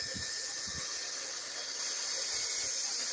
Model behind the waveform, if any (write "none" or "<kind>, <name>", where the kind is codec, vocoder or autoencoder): none